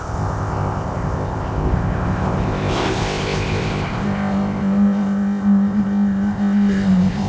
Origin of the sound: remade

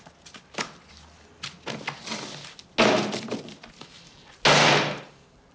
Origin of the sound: recorded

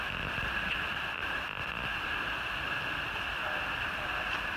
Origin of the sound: remade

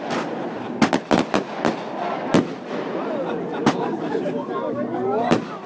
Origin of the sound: remade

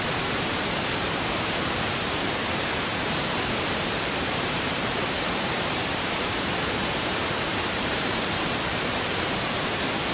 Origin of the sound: remade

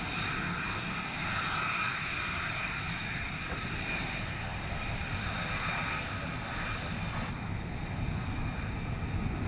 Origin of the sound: recorded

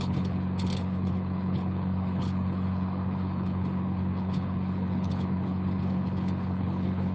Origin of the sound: remade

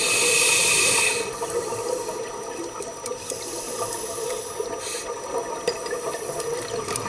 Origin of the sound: recorded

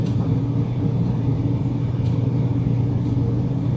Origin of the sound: remade